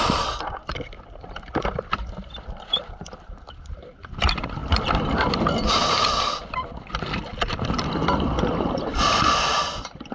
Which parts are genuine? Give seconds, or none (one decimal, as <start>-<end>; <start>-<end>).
0.7-1.7